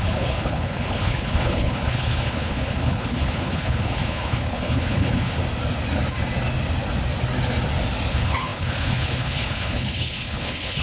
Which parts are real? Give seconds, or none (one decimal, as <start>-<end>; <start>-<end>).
5.4-8.1